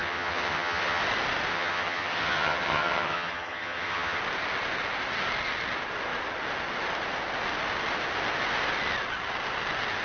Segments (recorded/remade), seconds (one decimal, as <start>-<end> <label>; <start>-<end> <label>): 0.0-1.0 remade; 1.0-1.5 recorded; 1.5-4.2 remade; 4.2-10.0 recorded